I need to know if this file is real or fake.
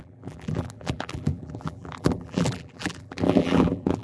fake